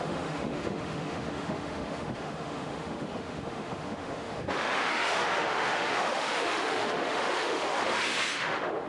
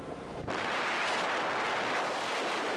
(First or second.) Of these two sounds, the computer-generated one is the first